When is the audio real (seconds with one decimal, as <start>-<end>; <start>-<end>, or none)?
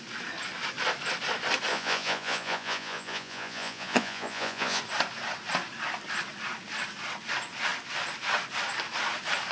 0.0-1.7; 4.8-9.5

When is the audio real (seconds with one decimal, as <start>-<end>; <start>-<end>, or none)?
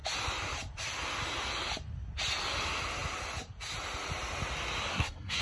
0.0-4.9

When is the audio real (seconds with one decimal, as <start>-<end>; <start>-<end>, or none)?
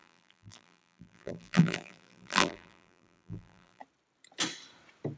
3.8-5.2